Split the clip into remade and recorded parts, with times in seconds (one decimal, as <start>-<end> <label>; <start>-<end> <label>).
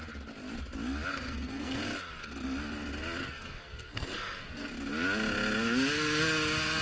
0.0-1.1 recorded; 1.1-1.8 remade; 1.8-3.2 recorded; 3.2-4.7 remade; 4.7-6.8 recorded